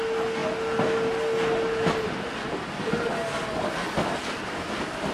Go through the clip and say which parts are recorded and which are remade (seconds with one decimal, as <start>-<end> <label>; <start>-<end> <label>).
0.0-5.1 recorded